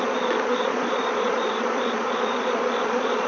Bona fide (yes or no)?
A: no